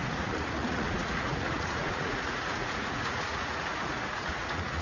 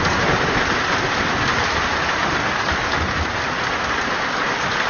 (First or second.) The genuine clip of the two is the second